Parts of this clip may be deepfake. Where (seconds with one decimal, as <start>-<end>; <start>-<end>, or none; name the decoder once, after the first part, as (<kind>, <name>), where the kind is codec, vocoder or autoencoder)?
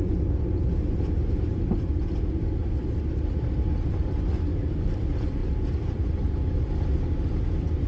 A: 5.4-6.7 (vocoder, BigVGAN v2)